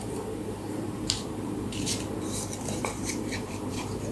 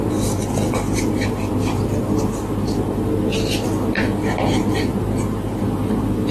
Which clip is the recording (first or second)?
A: second